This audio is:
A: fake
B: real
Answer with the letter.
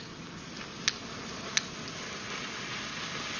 B